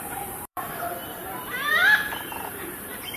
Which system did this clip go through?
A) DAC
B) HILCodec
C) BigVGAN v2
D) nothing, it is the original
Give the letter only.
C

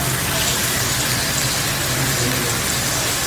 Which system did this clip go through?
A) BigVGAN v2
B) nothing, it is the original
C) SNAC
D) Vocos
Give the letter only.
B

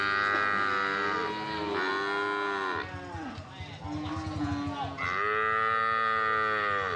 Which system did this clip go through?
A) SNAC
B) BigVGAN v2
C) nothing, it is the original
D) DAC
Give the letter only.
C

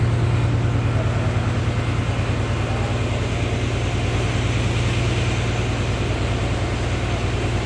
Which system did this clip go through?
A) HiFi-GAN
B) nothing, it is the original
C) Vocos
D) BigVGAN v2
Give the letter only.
B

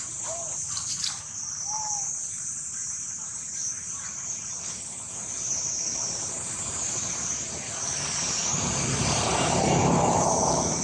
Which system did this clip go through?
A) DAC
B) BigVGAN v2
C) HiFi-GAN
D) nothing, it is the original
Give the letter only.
B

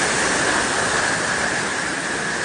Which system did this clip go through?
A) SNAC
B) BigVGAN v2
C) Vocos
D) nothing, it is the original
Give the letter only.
D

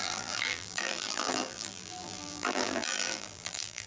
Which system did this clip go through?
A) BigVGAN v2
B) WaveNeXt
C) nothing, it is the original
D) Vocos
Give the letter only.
A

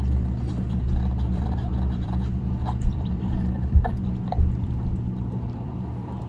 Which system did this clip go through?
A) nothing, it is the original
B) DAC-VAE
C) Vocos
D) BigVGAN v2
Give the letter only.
D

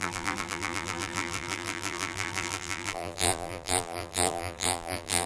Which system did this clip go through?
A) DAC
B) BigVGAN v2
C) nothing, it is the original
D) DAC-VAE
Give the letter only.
B